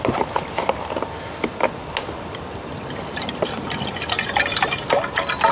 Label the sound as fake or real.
real